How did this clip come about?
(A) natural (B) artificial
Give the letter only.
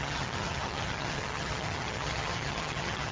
B